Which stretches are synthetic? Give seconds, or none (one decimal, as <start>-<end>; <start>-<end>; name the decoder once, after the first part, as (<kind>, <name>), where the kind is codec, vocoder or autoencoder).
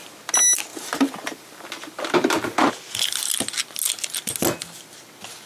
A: 0.7-2.7 (vocoder, BigVGAN v2)